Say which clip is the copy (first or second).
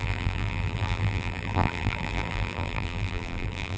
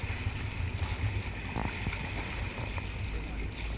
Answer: first